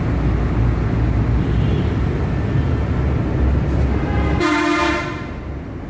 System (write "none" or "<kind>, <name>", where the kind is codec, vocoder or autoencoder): none